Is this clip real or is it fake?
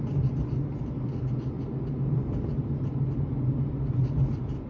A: real